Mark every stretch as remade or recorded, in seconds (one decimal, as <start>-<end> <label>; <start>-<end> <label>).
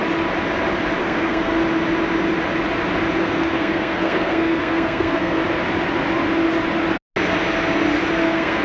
0.0-1.0 recorded; 1.0-1.5 remade; 1.5-3.2 recorded; 3.2-5.4 remade; 5.4-8.2 recorded; 8.2-8.6 remade